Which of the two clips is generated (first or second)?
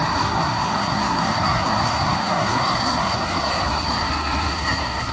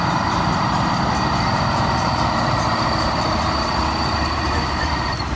first